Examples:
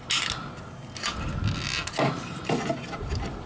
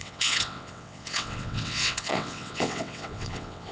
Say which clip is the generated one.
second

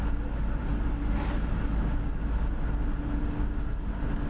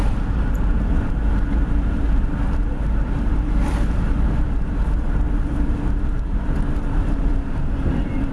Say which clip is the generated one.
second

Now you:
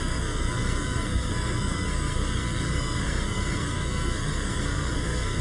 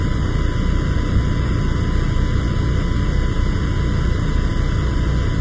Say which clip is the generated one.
first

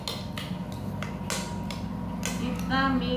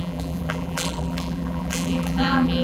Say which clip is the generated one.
second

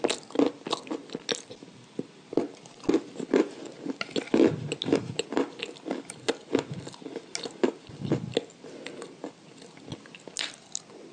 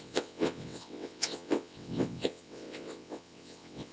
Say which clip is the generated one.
second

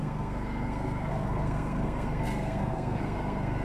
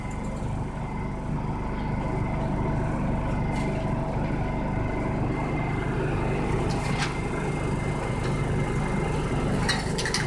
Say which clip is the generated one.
first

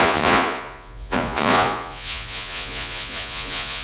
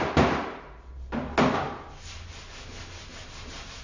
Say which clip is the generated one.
first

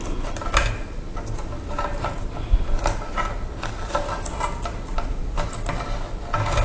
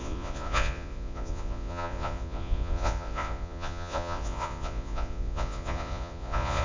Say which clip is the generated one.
second